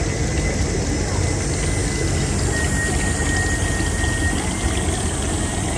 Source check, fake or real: real